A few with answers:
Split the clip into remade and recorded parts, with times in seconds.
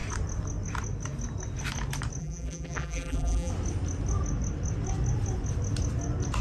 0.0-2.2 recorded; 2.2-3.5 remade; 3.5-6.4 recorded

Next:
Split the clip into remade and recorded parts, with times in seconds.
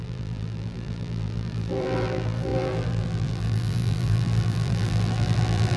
0.0-5.8 remade